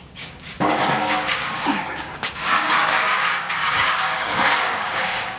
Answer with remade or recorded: remade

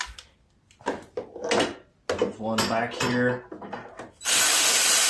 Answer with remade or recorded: recorded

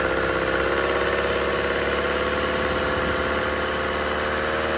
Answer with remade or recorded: recorded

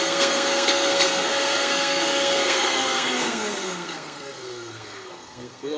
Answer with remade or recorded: remade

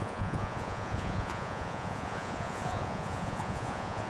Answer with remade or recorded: remade